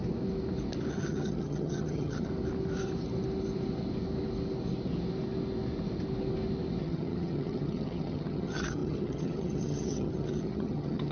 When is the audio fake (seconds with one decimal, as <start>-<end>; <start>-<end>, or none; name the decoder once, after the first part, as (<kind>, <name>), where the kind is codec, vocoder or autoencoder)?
0.9-2.3 (vocoder, HiFi-GAN); 6.8-11.1